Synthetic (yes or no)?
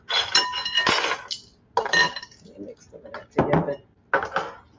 no